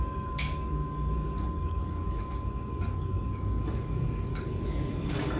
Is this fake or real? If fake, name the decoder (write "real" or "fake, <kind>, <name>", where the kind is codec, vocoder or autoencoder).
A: fake, codec, DAC